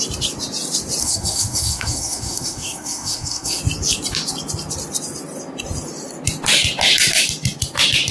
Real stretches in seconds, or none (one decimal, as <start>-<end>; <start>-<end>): 0.0-1.0; 3.6-8.1